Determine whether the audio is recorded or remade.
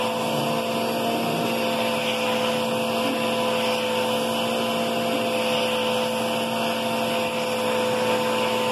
recorded